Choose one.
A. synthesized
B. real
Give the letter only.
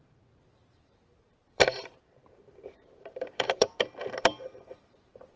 A